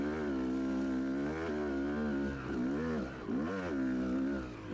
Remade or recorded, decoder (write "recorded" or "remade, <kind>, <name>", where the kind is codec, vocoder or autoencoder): recorded